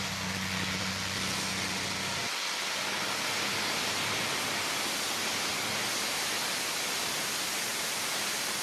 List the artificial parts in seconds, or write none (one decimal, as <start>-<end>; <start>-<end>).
7.7-8.6